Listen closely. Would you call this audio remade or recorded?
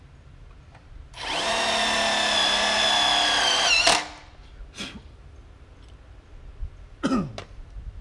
recorded